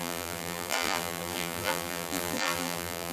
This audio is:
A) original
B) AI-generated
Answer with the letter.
B